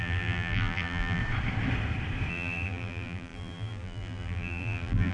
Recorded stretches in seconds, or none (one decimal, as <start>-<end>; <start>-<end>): 1.2-2.3